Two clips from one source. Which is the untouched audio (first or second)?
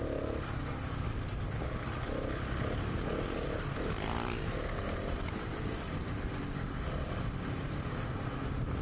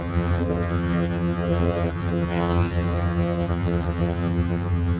first